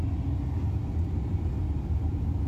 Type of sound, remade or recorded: recorded